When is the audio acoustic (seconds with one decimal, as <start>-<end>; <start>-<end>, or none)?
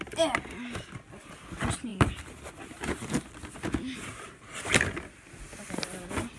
0.0-6.4